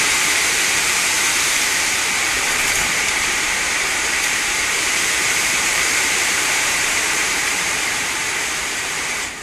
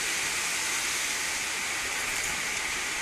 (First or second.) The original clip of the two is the second